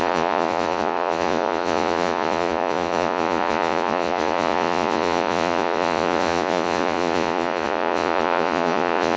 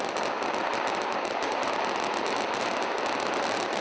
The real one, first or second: second